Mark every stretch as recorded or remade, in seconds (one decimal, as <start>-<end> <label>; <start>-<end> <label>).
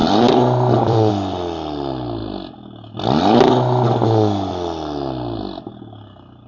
0.0-1.1 remade; 1.1-6.5 recorded